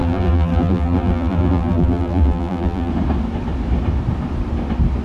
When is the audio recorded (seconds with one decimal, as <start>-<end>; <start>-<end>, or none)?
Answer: 2.9-5.0